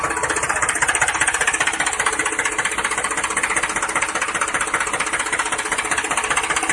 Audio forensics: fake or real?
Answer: real